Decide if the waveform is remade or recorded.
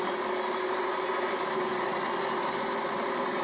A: recorded